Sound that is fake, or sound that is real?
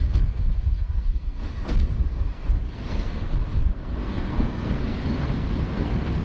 fake